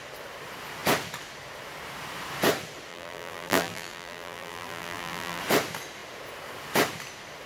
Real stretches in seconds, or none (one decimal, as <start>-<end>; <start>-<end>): 0.0-2.9; 5.4-7.5